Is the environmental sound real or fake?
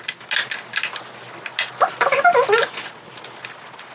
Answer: real